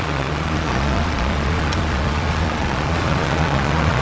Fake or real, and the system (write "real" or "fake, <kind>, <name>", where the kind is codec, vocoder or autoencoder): fake, vocoder, Vocos